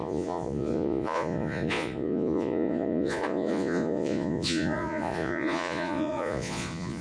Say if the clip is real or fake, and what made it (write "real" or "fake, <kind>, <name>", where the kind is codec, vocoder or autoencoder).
fake, vocoder, Vocos